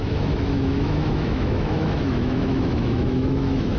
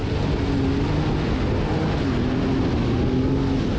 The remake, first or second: first